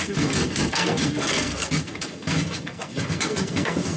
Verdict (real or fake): fake